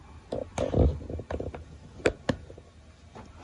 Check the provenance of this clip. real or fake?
real